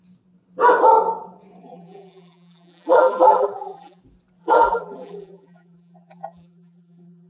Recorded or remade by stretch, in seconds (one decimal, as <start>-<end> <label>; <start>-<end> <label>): 0.0-1.6 recorded; 1.6-4.0 remade; 4.0-4.4 recorded; 4.4-7.3 remade